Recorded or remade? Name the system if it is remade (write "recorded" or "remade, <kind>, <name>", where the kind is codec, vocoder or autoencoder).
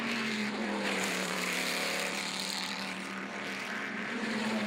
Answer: remade, vocoder, BigVGAN v2